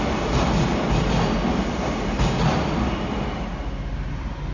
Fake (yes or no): no